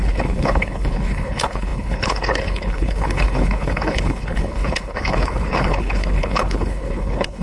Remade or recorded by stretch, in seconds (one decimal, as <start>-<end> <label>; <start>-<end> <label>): 0.0-7.4 remade